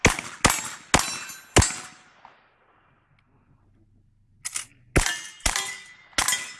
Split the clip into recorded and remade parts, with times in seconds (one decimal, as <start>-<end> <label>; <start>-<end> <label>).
0.0-6.6 recorded